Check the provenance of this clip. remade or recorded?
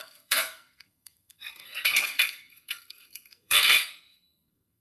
remade